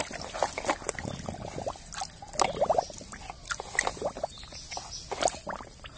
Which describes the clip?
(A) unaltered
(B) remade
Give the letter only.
A